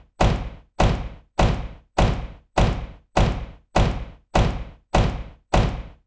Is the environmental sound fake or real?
real